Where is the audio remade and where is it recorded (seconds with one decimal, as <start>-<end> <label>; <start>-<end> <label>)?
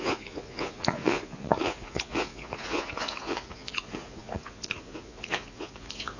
0.0-6.2 remade